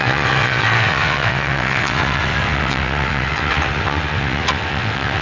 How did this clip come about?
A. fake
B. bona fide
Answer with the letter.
A